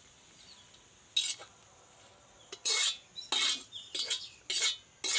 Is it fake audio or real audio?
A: real